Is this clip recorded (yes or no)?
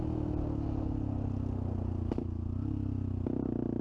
yes